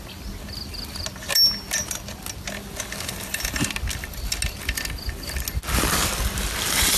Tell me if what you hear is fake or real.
real